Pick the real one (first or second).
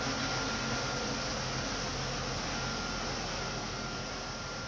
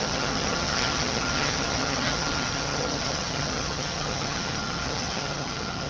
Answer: first